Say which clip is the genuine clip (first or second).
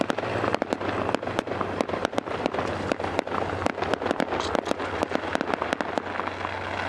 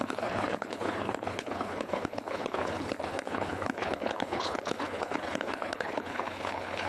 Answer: first